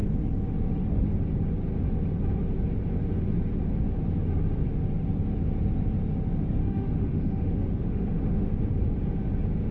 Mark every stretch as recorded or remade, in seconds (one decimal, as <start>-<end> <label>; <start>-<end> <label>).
0.0-6.6 recorded; 6.6-8.6 remade; 8.6-9.7 recorded